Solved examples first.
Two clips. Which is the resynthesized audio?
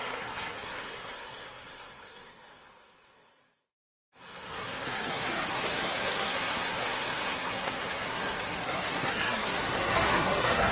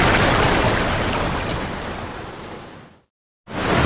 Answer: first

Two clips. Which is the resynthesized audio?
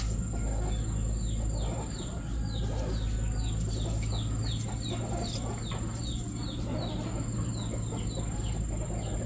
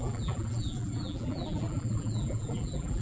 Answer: second